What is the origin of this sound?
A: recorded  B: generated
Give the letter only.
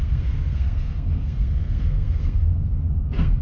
B